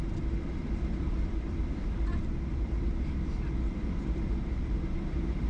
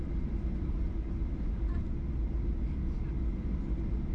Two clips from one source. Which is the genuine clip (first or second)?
second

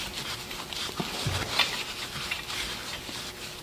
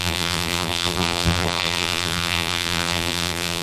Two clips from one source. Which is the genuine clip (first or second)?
first